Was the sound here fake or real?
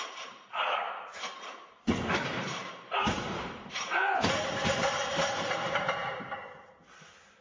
fake